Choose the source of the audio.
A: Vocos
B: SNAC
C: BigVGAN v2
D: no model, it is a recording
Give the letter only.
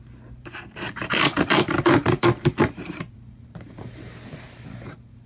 C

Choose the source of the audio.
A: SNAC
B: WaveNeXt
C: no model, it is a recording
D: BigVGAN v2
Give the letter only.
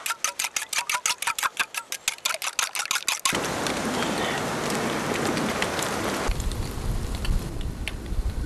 C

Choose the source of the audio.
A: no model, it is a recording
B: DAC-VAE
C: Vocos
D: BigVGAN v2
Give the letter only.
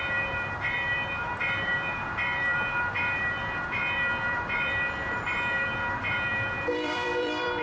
D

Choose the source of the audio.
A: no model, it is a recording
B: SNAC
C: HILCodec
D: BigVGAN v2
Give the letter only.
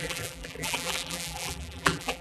D